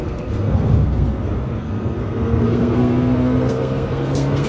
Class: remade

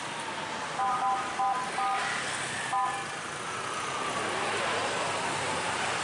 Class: recorded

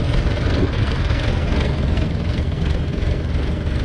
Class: remade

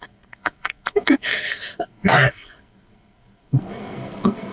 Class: remade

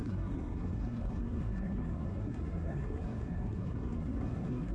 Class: remade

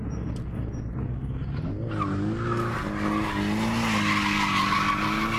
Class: recorded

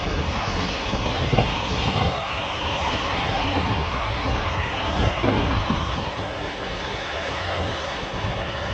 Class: remade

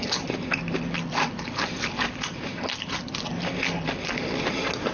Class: recorded